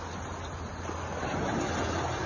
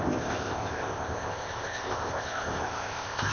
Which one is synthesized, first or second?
second